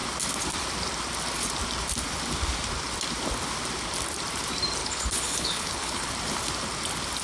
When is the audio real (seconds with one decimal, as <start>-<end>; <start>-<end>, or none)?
0.0-4.8; 6.1-7.2